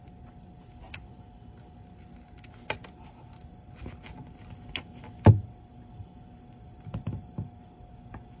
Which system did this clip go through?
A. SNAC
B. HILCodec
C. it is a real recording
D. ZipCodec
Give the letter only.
C